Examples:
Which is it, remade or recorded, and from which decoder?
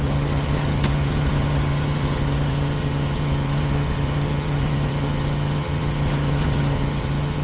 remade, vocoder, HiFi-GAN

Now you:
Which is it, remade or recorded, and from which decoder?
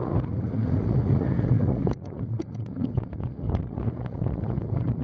remade, vocoder, Vocos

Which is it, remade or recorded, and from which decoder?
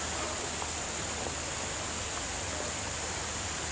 recorded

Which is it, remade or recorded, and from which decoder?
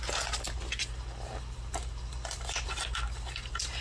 recorded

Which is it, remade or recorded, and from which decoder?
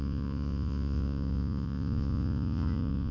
remade, vocoder, Vocos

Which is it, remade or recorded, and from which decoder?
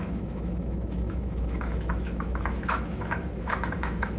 remade, autoencoder, DAC-VAE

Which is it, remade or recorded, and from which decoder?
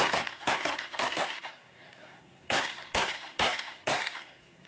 remade, codec, SNAC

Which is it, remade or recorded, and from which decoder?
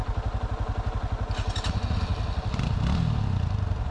recorded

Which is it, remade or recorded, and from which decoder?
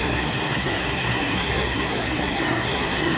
remade, codec, SNAC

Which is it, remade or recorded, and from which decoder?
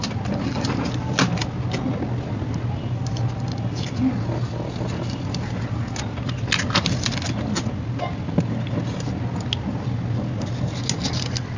recorded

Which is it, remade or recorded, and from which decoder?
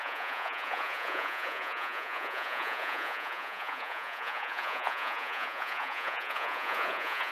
remade, vocoder, Vocos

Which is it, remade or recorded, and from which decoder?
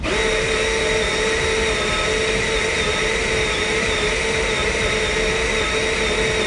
recorded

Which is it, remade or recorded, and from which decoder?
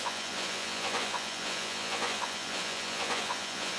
remade, vocoder, Vocos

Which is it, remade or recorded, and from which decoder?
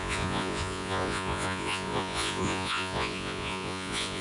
remade, vocoder, Vocos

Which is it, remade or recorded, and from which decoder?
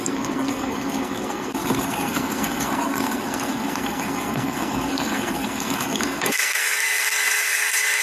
remade, codec, SNAC